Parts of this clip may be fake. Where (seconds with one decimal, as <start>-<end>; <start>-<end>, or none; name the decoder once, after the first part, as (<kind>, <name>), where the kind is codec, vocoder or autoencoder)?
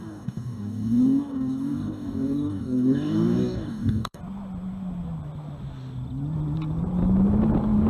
0.0-4.2 (codec, DAC)